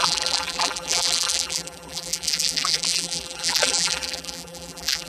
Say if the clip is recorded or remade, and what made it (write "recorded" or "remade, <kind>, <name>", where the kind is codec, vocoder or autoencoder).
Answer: remade, vocoder, BigVGAN v2